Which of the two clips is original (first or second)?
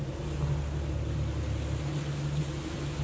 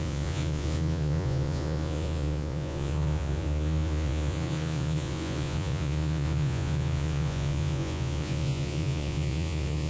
first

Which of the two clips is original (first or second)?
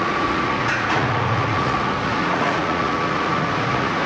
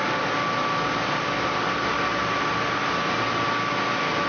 second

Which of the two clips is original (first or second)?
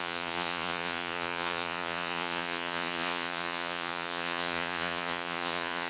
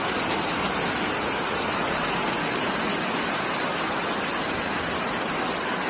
second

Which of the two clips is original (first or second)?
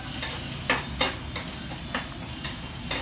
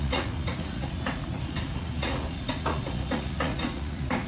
first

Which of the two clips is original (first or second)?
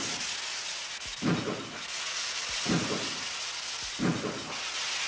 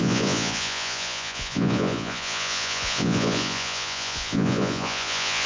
first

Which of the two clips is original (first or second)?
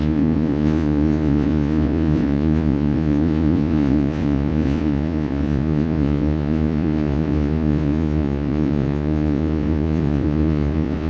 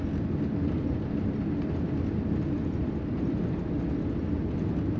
second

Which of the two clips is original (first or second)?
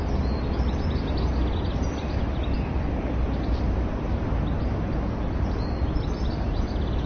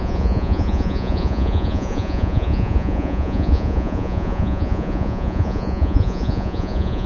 first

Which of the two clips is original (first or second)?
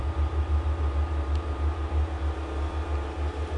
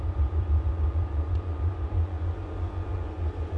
first